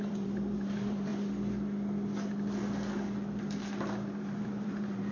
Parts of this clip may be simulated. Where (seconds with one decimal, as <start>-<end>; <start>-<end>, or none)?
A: 0.0-1.1; 4.2-5.1